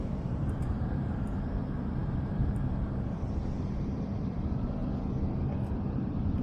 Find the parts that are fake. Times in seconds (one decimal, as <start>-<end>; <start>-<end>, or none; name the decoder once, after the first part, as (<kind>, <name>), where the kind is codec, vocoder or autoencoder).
0.0-4.8 (vocoder, BigVGAN v2); 5.9-6.4